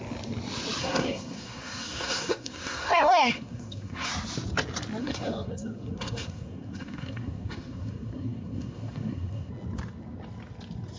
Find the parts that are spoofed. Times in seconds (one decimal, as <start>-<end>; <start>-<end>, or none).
0.8-4.1; 5.0-9.5